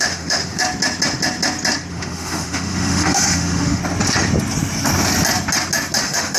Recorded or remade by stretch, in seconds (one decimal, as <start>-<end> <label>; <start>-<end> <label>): 0.0-0.6 remade; 0.6-1.9 recorded; 1.9-3.8 remade; 3.8-6.0 recorded; 6.0-6.4 remade